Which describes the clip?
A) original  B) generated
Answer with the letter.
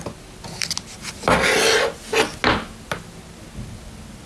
A